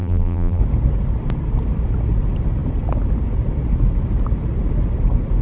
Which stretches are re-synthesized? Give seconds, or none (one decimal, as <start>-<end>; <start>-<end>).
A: 0.0-0.6